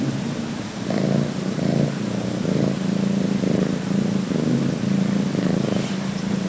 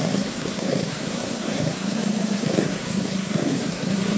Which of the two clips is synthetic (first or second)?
second